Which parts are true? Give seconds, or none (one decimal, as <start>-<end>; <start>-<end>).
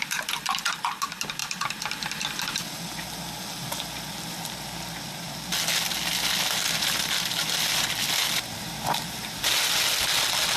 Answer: 0.0-8.5; 9.5-10.6